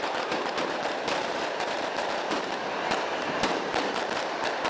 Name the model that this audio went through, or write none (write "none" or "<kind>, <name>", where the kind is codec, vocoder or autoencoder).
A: vocoder, BigVGAN v2